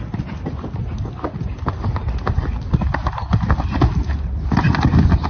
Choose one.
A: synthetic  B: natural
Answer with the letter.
B